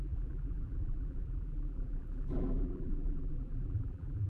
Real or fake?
fake